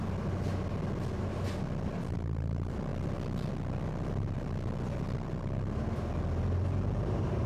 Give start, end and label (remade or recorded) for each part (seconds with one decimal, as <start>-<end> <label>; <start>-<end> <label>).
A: 0.0-7.5 recorded